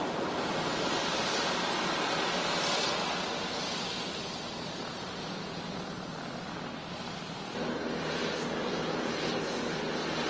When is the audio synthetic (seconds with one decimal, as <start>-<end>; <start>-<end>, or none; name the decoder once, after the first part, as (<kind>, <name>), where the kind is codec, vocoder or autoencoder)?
4.9-5.6 (vocoder, Vocos); 8.6-9.1